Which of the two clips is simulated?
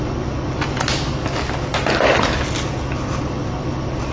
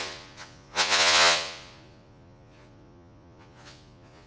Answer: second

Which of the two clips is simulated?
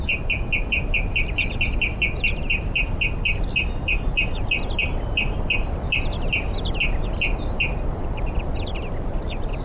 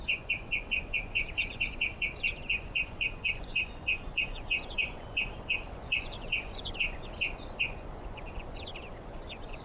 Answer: second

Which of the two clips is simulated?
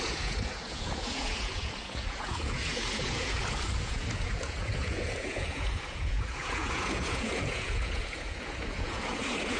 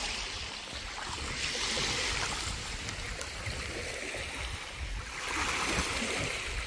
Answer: first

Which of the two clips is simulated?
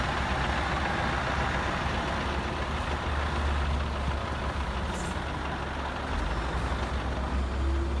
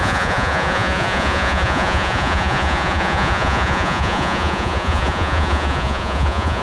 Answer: second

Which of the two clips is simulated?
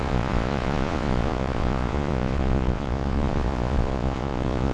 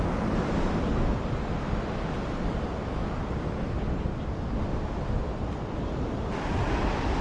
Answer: first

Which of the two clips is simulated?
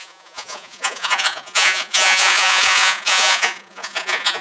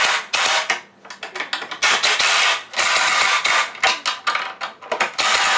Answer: first